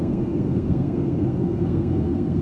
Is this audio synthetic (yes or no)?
yes